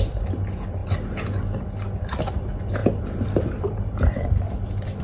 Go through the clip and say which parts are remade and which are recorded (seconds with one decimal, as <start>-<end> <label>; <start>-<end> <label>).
0.0-2.8 recorded; 2.8-5.0 remade